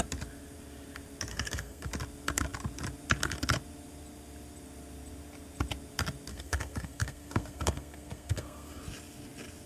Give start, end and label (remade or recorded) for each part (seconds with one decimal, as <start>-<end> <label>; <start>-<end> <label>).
0.0-1.3 recorded; 1.3-1.9 remade; 1.9-6.3 recorded; 6.3-8.8 remade; 8.8-9.7 recorded